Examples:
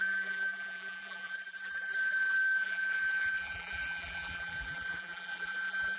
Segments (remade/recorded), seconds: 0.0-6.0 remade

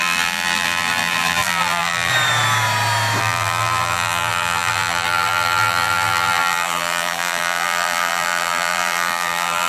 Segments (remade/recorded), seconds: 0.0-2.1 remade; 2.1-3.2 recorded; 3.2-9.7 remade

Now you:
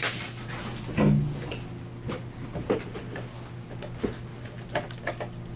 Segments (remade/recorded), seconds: 0.0-5.6 recorded

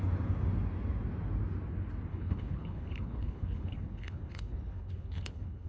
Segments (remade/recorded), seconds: 0.0-2.1 recorded; 2.1-5.7 remade

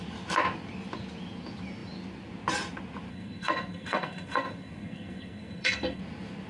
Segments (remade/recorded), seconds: 0.0-3.1 recorded; 3.1-6.0 remade; 6.0-6.5 recorded